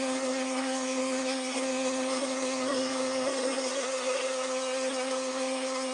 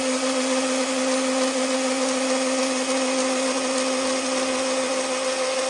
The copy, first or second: first